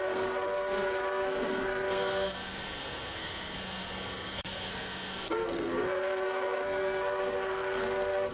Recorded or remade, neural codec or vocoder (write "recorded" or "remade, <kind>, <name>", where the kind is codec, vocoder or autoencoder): remade, codec, SNAC